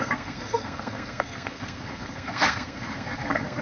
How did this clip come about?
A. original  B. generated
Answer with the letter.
B